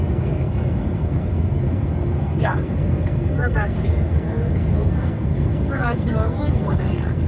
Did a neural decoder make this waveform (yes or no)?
yes